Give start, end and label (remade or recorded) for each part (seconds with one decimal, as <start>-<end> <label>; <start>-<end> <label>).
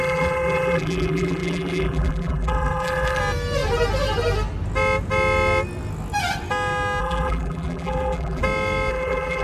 0.0-3.2 remade; 3.2-7.0 recorded; 7.0-8.4 remade; 8.4-8.9 recorded; 8.9-9.4 remade